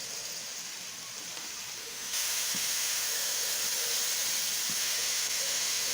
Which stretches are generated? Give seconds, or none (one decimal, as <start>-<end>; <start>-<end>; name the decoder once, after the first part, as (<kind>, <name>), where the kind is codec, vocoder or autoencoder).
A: 1.8-3.6 (autoencoder, DAC-VAE); 4.8-5.9